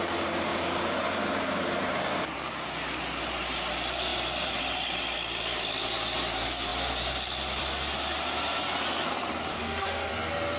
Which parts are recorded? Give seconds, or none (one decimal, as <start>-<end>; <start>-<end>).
0.0-9.5; 10.1-10.6